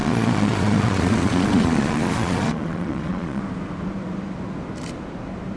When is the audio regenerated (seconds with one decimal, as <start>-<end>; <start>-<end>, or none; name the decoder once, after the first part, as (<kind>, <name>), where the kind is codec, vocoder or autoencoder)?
0.0-3.4 (vocoder, Vocos)